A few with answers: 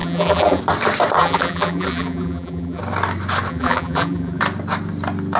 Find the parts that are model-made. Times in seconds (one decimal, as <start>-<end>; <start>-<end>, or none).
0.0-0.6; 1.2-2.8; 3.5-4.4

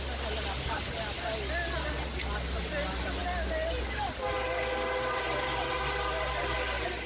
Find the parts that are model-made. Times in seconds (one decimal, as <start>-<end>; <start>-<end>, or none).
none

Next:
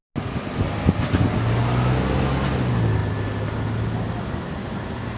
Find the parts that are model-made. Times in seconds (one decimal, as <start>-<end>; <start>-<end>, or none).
none